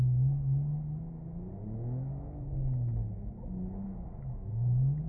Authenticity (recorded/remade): recorded